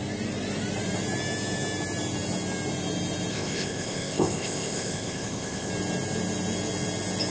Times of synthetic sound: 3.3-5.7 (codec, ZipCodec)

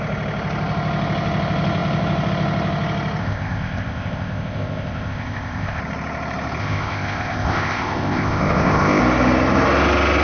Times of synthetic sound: 3.2-5.8 (codec, ZipCodec); 6.6-9.0

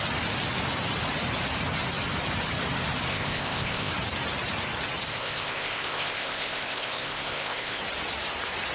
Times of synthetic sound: 3.1-3.9 (codec, ZipCodec); 5.1-7.8

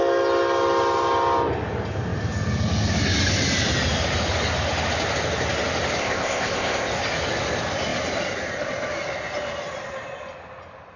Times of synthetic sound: 6.0-6.9 (codec, ZipCodec)